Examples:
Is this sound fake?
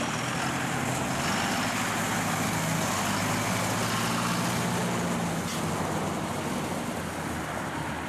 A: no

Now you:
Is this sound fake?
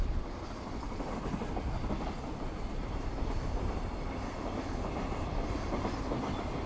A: no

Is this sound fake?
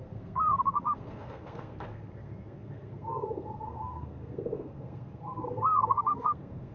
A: yes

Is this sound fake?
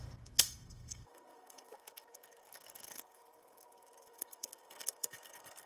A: yes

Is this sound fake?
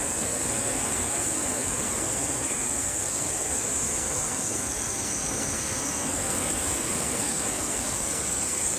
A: yes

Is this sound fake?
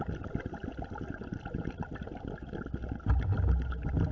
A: no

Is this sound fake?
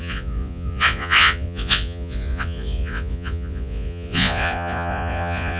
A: yes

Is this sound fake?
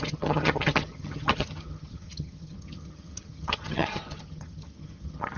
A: yes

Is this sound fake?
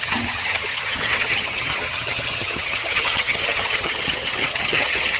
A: yes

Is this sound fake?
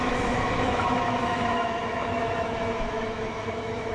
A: yes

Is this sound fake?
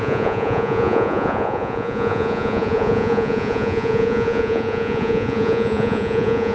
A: yes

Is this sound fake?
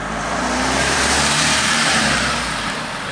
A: yes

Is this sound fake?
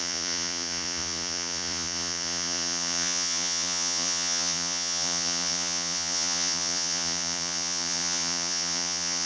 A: yes